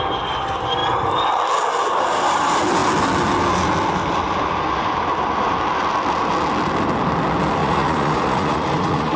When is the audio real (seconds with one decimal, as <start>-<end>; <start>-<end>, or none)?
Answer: 0.0-7.6